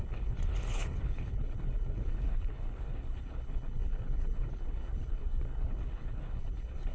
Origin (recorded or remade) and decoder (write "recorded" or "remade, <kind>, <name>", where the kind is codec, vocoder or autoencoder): remade, codec, HILCodec